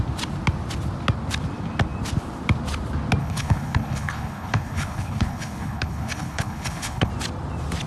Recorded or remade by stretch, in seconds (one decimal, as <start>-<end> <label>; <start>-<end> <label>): 0.0-3.2 recorded; 3.2-7.1 remade; 7.1-7.9 recorded